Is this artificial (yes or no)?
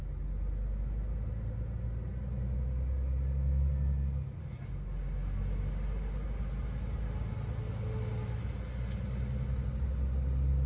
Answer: no